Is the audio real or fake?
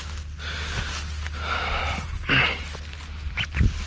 real